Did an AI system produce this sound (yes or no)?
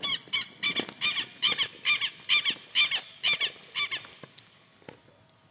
no